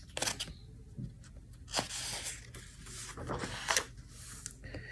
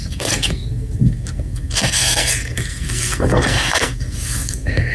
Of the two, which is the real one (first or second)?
first